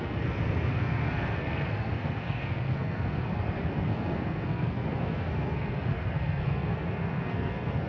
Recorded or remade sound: remade